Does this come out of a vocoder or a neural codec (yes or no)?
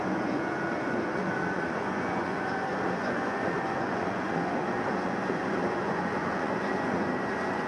yes